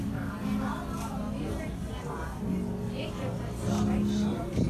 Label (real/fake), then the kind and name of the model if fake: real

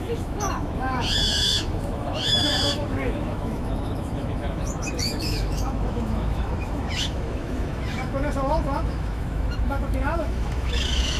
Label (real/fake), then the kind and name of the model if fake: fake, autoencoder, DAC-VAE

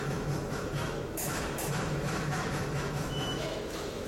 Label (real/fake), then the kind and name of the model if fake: fake, autoencoder, DAC-VAE